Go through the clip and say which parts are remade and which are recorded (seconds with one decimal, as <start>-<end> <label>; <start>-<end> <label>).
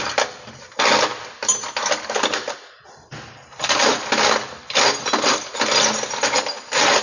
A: 0.0-7.0 recorded